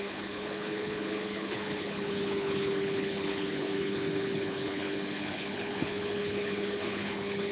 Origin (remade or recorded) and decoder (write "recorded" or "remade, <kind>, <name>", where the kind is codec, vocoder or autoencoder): remade, codec, HILCodec